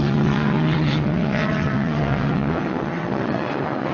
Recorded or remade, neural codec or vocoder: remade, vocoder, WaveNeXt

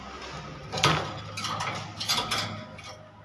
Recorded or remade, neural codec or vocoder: recorded